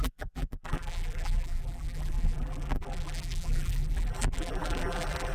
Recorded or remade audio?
remade